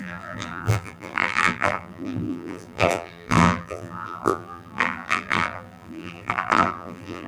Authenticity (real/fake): fake